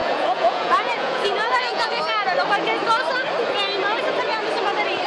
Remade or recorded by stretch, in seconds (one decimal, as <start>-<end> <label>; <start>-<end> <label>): 0.0-2.0 remade; 2.0-5.1 recorded